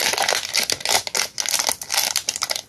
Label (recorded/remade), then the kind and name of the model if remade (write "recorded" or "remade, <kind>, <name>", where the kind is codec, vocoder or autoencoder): recorded